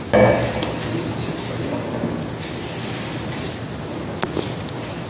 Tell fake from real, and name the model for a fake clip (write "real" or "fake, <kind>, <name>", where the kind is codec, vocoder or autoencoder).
real